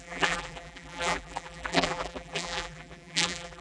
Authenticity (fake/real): fake